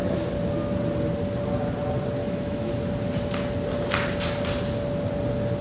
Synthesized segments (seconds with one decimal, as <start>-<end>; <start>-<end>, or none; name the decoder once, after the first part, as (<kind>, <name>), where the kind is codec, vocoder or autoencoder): 2.2-2.7 (autoencoder, DAC-VAE)